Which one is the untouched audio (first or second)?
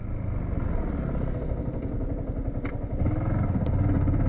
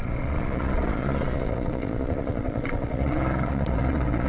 first